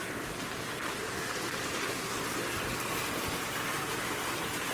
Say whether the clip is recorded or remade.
recorded